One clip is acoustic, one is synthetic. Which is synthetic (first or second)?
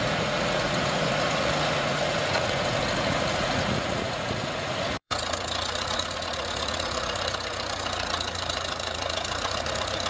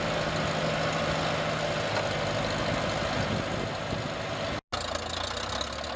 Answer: first